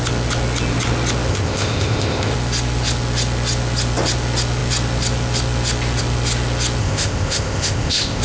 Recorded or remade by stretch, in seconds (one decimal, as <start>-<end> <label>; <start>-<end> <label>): 0.0-1.3 recorded; 1.3-2.3 remade; 2.3-6.8 recorded; 6.8-8.2 remade